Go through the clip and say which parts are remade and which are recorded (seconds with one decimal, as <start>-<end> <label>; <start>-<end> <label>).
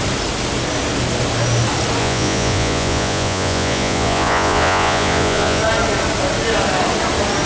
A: 0.0-2.0 recorded; 2.0-5.6 remade; 5.6-7.5 recorded